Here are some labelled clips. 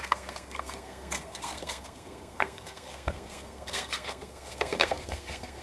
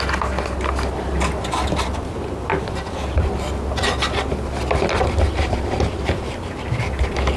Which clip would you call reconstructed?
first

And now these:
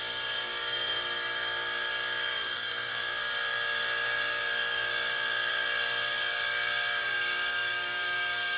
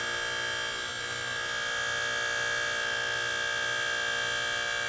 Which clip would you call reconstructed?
first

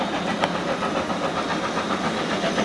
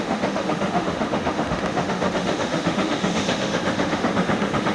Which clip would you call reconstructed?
second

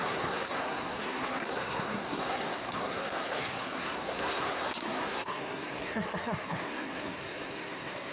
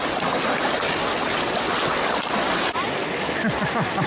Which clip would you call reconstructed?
first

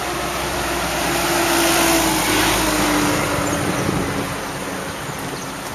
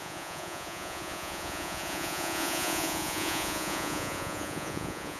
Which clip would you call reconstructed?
second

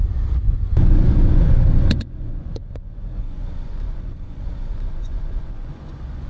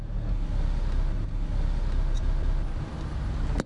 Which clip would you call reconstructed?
first